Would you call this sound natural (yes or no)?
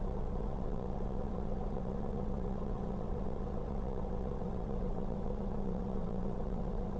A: no